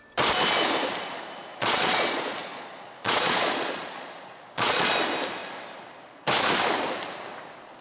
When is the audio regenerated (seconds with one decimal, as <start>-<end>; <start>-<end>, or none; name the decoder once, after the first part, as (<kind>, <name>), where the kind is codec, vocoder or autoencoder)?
1.6-4.9 (vocoder, Vocos)